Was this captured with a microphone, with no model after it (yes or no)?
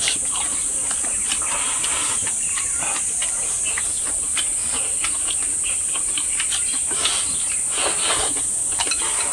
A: yes